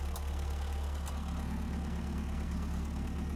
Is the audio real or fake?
fake